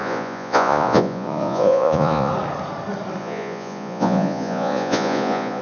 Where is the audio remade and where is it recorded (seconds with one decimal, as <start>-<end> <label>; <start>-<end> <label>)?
0.0-2.3 remade; 2.3-3.2 recorded; 3.2-5.6 remade